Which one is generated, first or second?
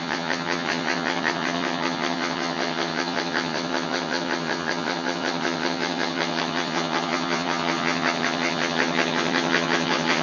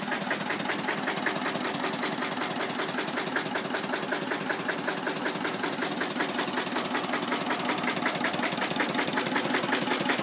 first